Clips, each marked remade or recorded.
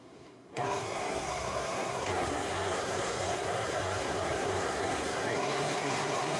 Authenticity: remade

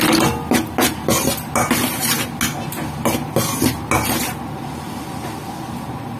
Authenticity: recorded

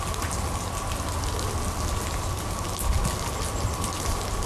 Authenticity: recorded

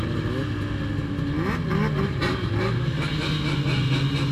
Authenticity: recorded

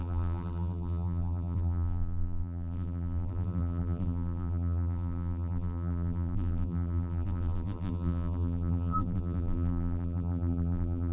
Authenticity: remade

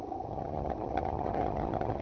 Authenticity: remade